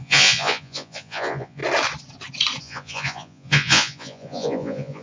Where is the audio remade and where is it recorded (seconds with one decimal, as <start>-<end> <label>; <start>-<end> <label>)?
0.0-1.6 remade; 1.6-2.6 recorded; 2.6-5.0 remade